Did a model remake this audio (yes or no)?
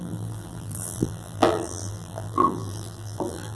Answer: yes